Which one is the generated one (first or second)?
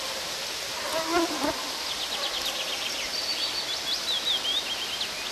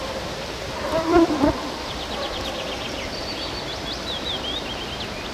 second